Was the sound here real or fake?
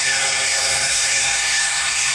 fake